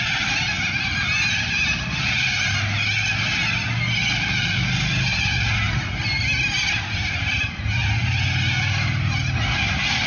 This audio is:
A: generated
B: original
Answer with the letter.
B